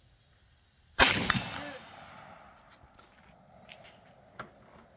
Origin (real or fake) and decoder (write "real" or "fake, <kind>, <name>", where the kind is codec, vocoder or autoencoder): real